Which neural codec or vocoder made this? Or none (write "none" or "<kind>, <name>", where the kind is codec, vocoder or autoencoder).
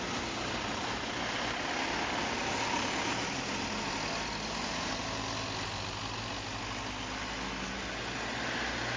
none